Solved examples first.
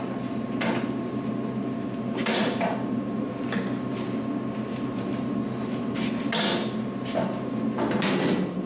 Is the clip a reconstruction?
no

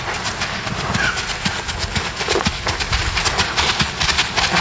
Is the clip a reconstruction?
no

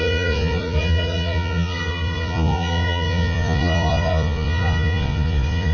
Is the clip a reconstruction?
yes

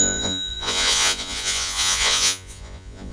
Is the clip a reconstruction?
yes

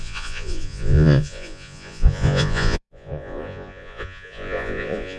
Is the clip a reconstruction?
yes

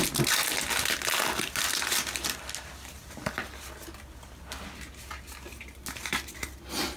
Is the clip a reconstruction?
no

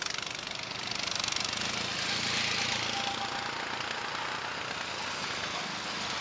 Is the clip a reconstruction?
no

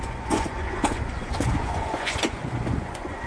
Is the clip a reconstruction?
yes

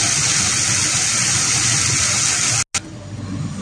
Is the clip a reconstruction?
no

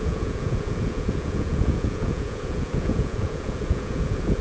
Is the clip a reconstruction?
yes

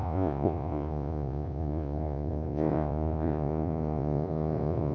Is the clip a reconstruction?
yes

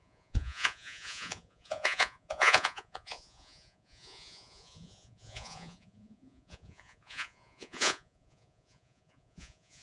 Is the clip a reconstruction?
yes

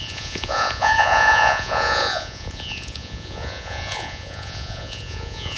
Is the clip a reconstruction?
yes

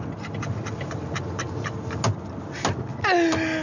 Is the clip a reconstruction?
no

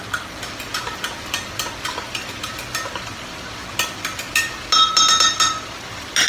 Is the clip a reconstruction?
no